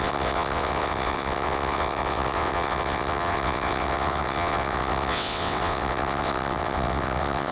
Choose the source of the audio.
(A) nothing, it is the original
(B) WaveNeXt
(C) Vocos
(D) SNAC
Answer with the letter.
B